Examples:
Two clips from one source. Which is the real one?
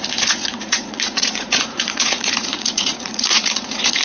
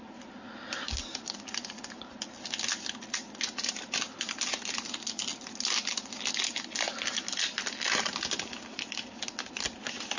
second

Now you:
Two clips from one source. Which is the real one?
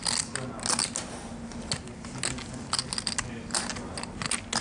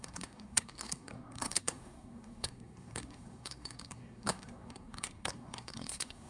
first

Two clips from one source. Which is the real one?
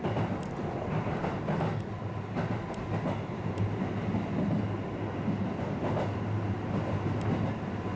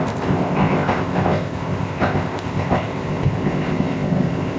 first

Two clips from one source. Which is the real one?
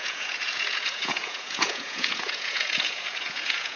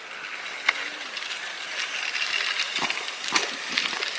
second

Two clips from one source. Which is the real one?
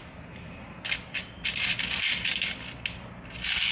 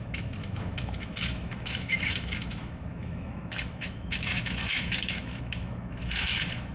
first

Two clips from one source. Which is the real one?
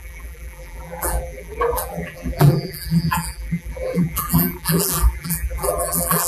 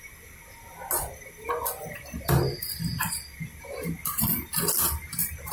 second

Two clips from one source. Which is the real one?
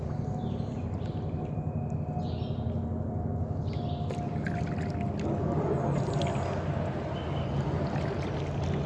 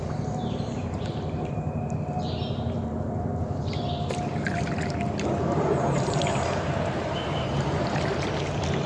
first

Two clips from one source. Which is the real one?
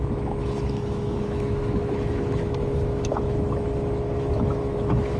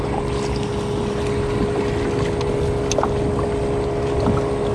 second